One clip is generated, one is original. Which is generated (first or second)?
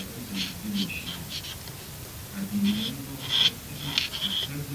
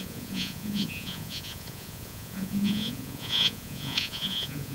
second